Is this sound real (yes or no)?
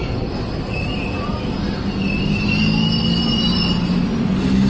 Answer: yes